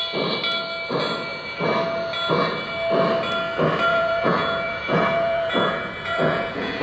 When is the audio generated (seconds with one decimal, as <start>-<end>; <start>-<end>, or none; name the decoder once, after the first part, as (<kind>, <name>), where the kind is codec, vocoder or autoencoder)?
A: 3.9-6.8 (vocoder, Vocos)